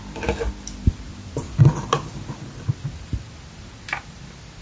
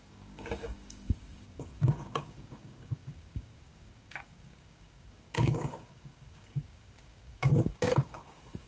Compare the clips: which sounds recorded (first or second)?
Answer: first